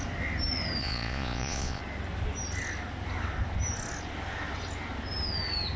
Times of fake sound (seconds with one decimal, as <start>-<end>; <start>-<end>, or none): 0.8-1.8